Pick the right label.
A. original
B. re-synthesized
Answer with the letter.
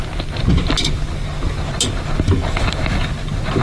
A